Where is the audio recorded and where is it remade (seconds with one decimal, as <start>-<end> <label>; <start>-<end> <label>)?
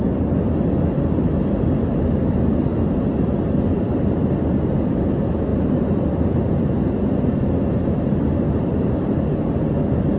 0.0-10.2 recorded